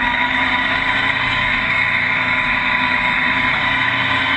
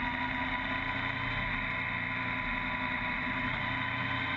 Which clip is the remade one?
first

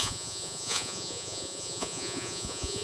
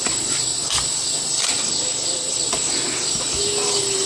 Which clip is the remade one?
first